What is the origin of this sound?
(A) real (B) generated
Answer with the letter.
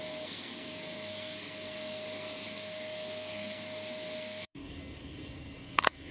B